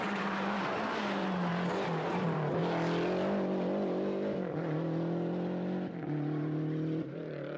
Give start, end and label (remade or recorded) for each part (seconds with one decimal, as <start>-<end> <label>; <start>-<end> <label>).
0.0-1.5 remade; 1.5-2.1 recorded; 2.1-2.6 remade; 2.6-7.0 recorded; 7.0-7.6 remade